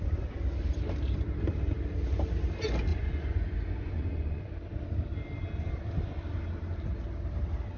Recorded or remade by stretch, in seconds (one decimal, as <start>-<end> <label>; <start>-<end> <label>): 0.0-2.9 recorded; 2.9-4.4 remade; 4.4-7.8 recorded